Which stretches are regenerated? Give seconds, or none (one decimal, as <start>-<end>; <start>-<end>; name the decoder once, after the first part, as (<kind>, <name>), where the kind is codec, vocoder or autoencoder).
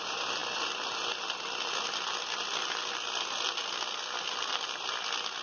none